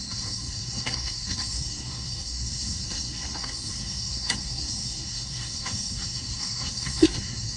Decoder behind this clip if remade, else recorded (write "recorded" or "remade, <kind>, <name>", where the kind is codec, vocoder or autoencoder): remade, codec, SNAC